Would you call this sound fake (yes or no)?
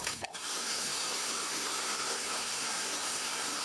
yes